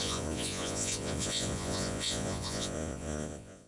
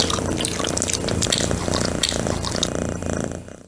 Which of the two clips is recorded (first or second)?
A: second